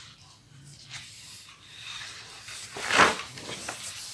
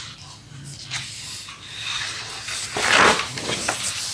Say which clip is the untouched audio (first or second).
second